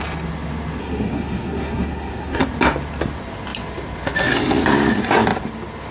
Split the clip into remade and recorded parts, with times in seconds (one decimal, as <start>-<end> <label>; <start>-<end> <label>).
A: 0.0-0.8 recorded; 0.8-2.4 remade; 2.4-5.9 recorded